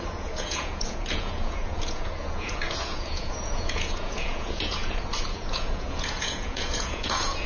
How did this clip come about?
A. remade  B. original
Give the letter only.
A